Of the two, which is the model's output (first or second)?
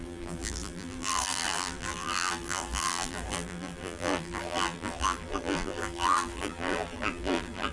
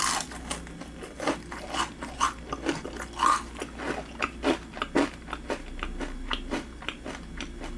first